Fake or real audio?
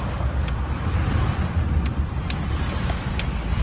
real